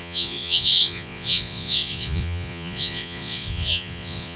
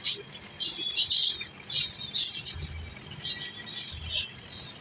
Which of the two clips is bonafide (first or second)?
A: second